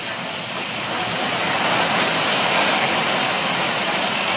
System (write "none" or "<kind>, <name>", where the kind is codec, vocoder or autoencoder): none